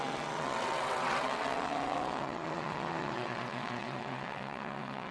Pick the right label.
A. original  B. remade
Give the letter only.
B